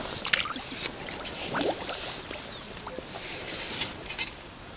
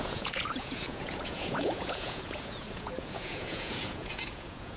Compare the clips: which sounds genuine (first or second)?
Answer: first